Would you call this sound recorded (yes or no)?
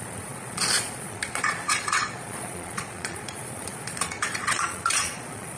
no